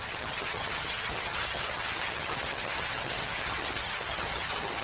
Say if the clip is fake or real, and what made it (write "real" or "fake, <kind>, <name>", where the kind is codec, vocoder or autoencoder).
fake, vocoder, HiFi-GAN